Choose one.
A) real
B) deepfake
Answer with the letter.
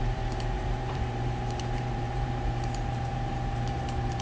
B